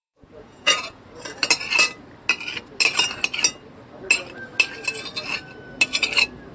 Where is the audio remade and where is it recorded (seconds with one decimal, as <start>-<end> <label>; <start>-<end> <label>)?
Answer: 0.0-1.0 remade; 1.0-6.5 recorded